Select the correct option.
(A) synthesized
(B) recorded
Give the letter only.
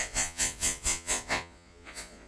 A